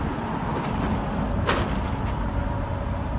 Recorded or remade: recorded